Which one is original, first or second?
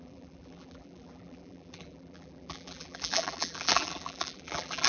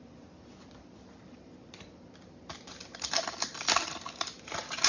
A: second